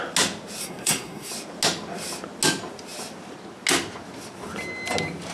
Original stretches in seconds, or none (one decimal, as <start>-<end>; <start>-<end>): 0.0-0.6; 1.3-5.3